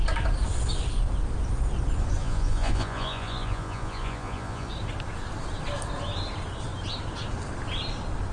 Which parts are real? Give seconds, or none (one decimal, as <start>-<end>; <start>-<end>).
0.0-2.2; 4.7-8.3